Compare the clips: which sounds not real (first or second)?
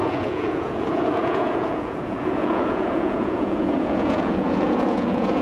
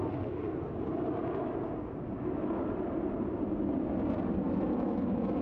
first